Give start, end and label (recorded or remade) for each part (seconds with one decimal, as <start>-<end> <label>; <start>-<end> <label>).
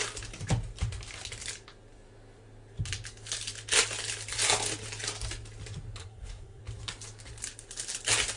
0.0-6.0 recorded; 6.0-6.6 remade; 6.6-8.4 recorded